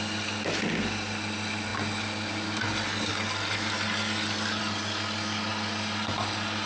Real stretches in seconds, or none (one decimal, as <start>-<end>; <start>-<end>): 0.0-6.7